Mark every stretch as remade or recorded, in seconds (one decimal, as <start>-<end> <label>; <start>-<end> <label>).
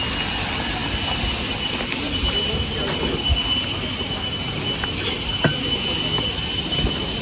0.0-7.2 recorded